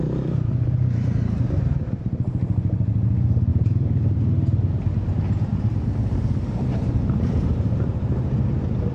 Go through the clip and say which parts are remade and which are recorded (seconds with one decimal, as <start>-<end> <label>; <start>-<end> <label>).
0.0-3.5 recorded; 3.5-8.5 remade; 8.5-8.9 recorded